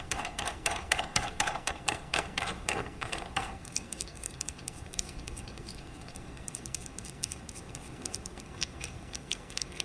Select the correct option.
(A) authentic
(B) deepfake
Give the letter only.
B